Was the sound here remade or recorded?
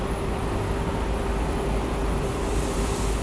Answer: recorded